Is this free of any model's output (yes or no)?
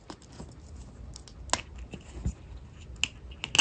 yes